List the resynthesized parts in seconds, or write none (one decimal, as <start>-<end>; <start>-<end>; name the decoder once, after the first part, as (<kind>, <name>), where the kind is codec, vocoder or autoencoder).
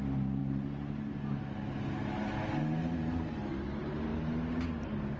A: none